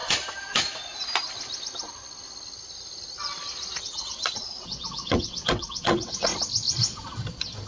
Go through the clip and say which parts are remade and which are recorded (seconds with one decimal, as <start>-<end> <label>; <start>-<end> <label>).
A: 0.0-3.8 recorded; 3.8-6.3 remade; 6.3-7.7 recorded